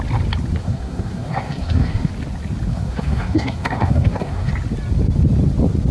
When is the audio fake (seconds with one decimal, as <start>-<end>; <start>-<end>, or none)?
0.6-2.1; 2.7-4.5